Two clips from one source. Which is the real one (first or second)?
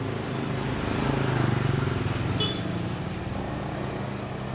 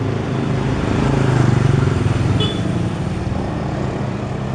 first